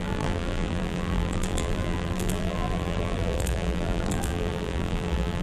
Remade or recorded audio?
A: remade